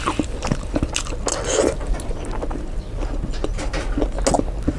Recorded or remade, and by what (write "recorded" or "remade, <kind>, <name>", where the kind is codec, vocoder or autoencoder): recorded